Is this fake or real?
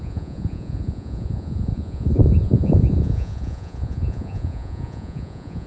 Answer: fake